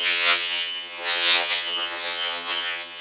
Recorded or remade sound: remade